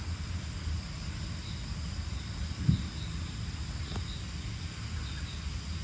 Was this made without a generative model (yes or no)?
yes